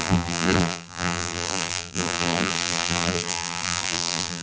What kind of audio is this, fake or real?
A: fake